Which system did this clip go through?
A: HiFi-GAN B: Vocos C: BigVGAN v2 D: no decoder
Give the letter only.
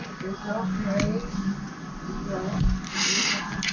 D